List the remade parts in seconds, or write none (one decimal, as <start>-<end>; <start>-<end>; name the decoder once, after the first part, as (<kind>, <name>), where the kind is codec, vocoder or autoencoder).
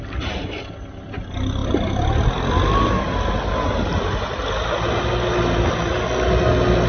none